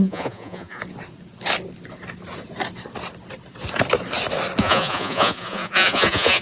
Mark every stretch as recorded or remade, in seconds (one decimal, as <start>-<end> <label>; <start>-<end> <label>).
0.0-0.8 remade; 0.8-4.6 recorded; 4.6-6.4 remade